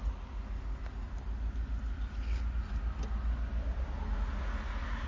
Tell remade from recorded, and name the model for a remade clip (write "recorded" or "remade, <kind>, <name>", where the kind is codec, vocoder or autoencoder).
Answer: recorded